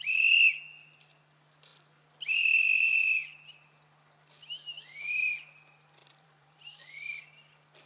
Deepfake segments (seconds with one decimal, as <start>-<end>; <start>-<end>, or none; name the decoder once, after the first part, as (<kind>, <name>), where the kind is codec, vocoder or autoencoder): 6.0-7.2 (vocoder, BigVGAN v2)